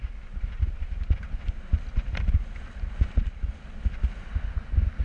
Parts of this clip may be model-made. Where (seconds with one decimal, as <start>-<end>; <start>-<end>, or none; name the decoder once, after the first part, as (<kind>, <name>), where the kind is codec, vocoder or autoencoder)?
none